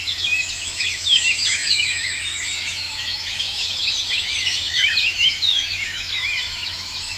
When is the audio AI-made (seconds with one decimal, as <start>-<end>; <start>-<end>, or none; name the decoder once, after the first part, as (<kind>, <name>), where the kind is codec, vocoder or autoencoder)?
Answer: 0.0-7.2 (autoencoder, DAC-VAE)